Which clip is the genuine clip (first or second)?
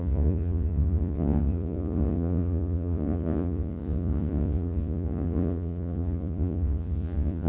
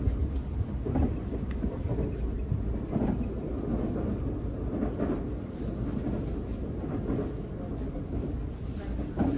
second